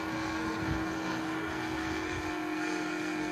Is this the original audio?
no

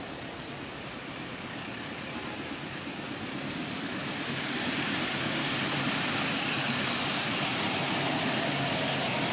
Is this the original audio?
yes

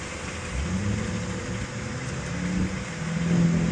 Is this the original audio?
yes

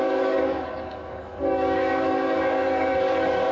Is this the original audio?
no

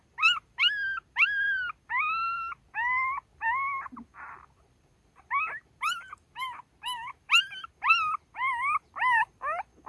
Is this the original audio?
no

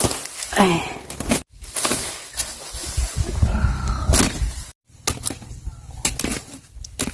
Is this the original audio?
yes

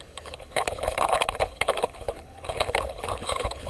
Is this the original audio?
no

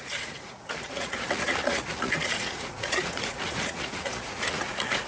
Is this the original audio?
no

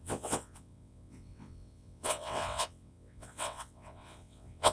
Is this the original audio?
no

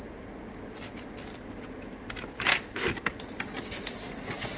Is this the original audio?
yes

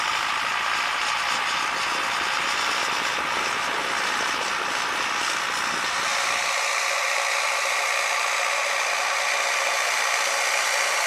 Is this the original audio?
yes